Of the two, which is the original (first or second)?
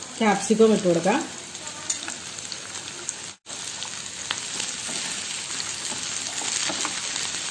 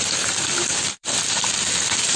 first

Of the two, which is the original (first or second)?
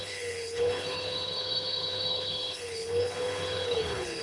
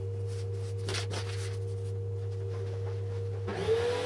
second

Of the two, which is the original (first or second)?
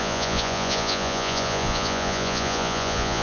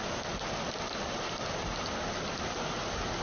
second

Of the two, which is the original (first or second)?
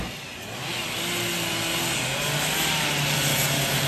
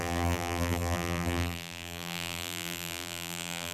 first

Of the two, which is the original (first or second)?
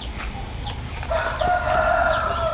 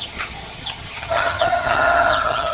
first